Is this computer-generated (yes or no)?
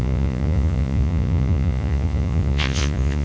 yes